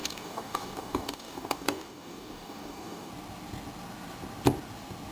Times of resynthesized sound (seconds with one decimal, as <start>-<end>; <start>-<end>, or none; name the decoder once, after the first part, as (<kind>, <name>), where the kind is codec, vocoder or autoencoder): 0.0-3.1 (codec, DAC)